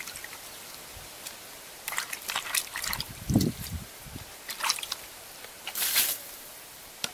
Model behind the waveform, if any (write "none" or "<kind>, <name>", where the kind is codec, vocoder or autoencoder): vocoder, BigVGAN v2